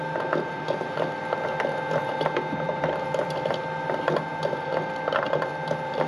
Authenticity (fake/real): real